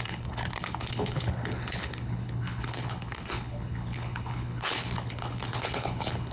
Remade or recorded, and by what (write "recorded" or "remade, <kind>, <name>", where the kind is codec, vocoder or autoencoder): remade, codec, HILCodec